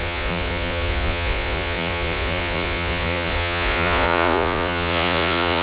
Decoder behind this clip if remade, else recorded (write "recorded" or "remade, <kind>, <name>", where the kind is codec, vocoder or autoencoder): remade, vocoder, Vocos